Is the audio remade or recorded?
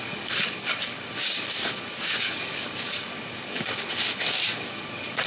remade